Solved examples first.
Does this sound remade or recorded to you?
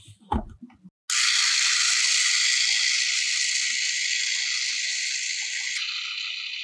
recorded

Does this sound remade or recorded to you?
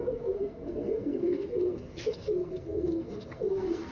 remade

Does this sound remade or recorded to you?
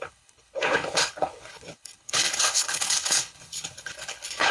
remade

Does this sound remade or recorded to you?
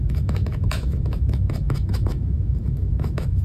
remade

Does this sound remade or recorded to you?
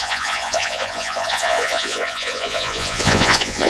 remade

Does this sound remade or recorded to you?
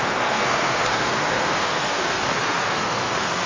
remade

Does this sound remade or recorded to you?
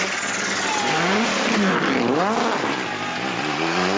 recorded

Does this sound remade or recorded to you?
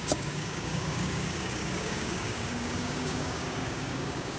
remade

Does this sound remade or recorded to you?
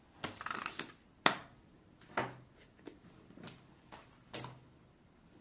recorded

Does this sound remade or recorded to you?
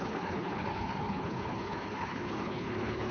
remade